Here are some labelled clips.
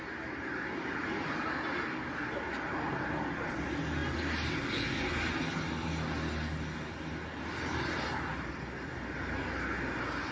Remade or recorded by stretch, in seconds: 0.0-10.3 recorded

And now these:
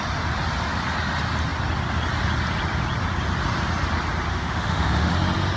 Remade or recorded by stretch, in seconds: 0.0-4.3 recorded; 4.3-5.1 remade; 5.1-5.6 recorded

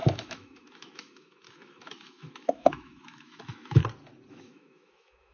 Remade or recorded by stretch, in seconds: 0.0-3.8 remade; 3.8-4.3 recorded; 4.3-5.3 remade

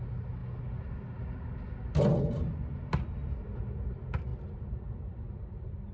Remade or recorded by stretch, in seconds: 0.0-5.9 recorded

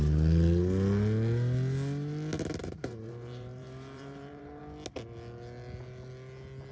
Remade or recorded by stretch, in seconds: 0.0-2.6 recorded; 2.6-4.6 remade; 4.6-6.7 recorded

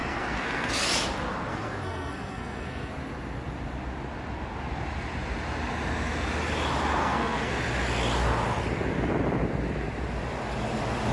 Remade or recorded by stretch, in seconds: 0.0-0.7 remade; 0.7-1.5 recorded; 1.5-2.9 remade; 2.9-7.0 recorded; 7.0-7.5 remade; 7.5-11.1 recorded

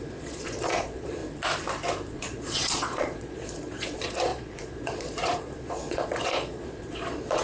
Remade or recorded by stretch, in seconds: 0.0-1.2 remade; 1.2-2.1 recorded; 2.1-7.4 remade

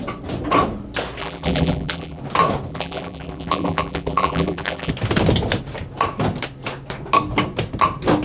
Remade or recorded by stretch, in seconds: 0.0-1.2 recorded; 1.2-2.2 remade; 2.2-2.7 recorded; 2.7-4.9 remade; 4.9-8.2 recorded